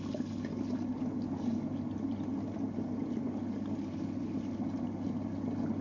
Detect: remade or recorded recorded